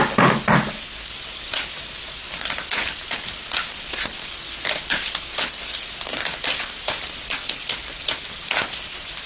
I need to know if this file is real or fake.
real